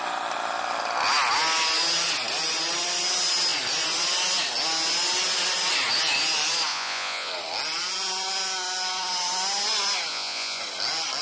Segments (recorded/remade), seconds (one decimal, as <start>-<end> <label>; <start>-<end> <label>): 0.0-6.7 recorded; 6.7-7.3 remade; 7.3-10.1 recorded; 10.1-10.6 remade; 10.6-11.2 recorded